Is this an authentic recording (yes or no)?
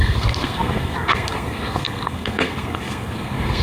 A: no